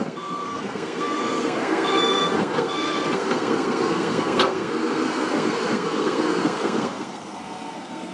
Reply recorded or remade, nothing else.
remade